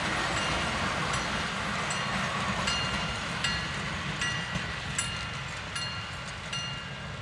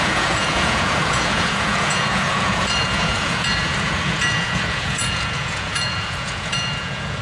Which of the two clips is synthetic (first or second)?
second